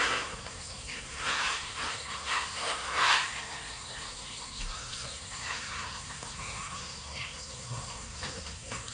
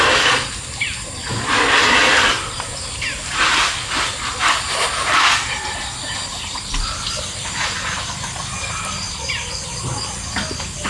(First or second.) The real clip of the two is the second